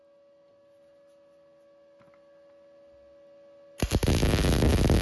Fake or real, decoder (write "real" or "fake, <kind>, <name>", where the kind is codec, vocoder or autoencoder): real